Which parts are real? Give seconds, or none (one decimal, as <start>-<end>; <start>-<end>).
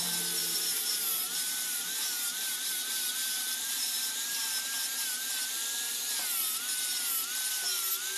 0.0-0.4; 5.3-8.2